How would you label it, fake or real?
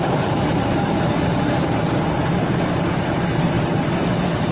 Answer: real